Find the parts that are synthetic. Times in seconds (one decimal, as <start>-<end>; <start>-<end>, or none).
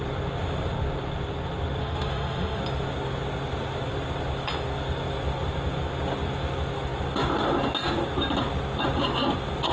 1.8-2.6